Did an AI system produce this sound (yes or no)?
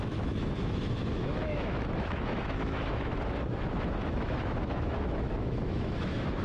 yes